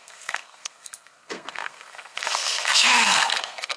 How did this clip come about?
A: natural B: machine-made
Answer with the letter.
B